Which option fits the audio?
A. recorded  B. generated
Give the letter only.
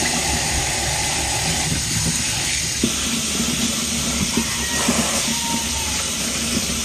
A